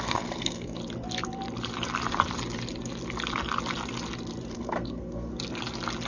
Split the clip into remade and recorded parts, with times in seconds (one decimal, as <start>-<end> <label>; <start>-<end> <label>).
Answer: 0.0-0.8 remade; 0.8-4.5 recorded; 4.5-5.3 remade; 5.3-6.1 recorded